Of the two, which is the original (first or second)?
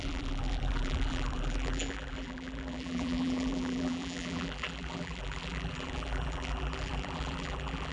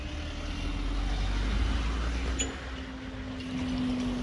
second